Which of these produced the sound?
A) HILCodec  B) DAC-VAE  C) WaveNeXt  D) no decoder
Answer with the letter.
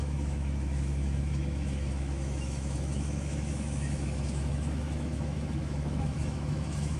B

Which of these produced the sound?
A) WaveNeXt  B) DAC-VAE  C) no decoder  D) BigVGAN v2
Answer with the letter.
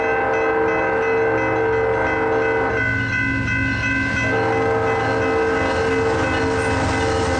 C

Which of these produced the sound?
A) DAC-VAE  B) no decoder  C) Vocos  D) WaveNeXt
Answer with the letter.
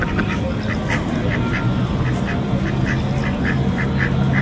B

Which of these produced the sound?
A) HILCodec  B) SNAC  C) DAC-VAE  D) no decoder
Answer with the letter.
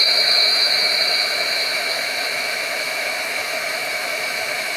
C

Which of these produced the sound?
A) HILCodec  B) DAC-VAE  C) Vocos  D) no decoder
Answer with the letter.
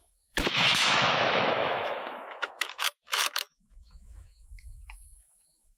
B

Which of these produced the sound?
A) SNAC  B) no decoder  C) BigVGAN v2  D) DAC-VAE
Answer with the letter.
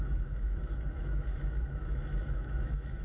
D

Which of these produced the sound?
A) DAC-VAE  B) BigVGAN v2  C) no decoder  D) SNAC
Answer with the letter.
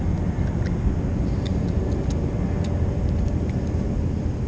C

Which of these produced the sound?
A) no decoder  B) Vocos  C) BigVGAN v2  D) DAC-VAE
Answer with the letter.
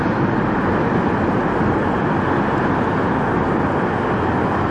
A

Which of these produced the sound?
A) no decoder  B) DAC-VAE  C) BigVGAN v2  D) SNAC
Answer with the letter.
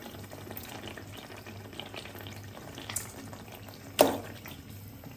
A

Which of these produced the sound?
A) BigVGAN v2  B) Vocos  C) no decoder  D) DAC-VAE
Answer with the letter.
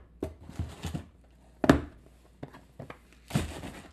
C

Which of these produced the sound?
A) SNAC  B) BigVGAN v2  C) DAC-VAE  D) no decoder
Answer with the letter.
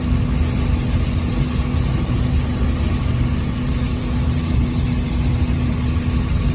D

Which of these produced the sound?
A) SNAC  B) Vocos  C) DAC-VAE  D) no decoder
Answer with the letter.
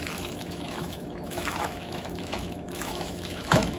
C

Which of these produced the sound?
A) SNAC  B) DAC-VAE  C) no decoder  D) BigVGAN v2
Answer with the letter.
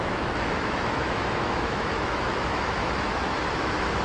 B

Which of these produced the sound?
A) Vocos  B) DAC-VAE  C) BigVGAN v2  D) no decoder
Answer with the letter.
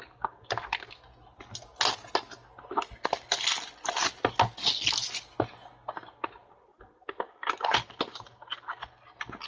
D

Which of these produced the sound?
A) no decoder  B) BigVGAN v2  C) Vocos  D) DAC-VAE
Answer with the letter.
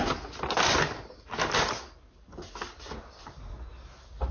A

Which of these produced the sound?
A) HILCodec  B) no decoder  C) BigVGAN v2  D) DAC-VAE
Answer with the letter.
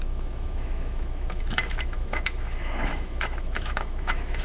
D